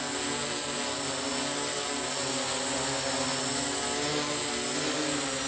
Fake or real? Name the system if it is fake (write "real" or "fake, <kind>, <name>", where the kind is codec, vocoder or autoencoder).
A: real